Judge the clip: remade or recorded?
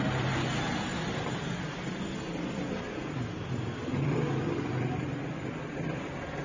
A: recorded